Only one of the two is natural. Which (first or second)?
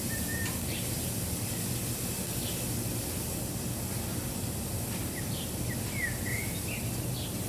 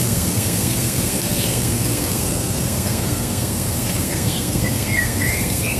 first